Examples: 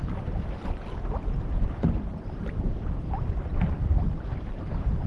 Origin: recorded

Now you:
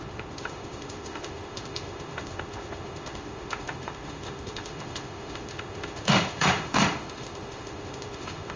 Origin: remade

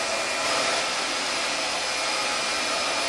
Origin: recorded